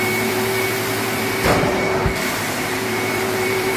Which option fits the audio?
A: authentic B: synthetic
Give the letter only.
B